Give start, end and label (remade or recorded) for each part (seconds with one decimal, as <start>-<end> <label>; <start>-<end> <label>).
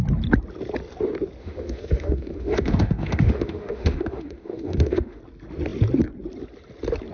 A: 0.0-1.4 recorded; 1.4-5.2 remade; 5.2-7.1 recorded